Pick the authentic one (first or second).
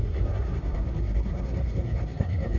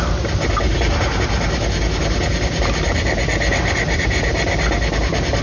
second